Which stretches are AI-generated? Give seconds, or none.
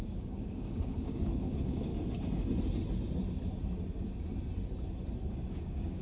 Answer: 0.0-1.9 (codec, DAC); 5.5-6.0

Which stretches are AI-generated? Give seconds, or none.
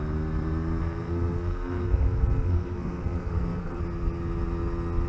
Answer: 0.8-3.8 (codec, SNAC)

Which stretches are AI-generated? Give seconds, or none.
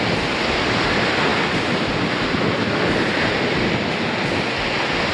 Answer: 3.1-3.9 (vocoder, BigVGAN v2)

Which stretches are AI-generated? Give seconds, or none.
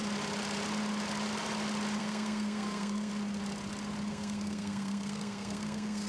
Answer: 2.0-3.1 (codec, SNAC); 4.1-6.1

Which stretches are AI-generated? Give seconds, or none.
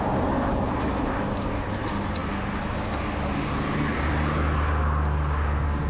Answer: none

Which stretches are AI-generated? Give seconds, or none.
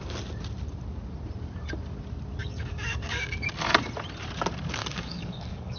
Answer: 2.4-3.5 (codec, DAC); 4.8-5.8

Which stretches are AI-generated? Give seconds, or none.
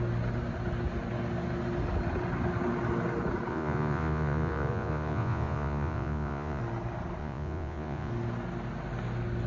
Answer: 3.5-6.6 (vocoder, Vocos); 7.2-8.1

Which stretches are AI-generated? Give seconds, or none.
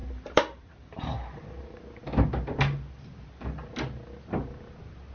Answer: 0.0-1.8 (vocoder, BigVGAN v2)